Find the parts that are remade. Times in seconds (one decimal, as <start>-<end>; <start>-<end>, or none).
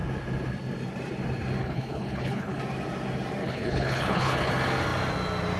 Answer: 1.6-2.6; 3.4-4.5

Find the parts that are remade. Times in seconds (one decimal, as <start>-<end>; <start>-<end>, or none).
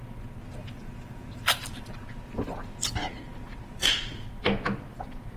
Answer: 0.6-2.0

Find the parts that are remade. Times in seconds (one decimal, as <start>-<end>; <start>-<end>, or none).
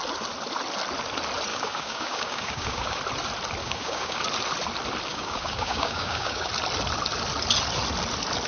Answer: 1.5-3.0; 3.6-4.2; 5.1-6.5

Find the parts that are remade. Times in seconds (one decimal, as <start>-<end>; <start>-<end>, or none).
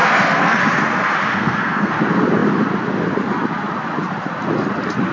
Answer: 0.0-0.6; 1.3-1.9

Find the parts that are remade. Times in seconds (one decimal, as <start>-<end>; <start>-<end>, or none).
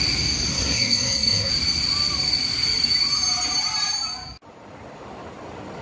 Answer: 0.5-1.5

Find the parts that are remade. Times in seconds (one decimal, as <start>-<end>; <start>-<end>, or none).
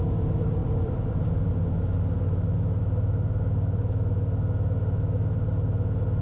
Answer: 0.6-1.5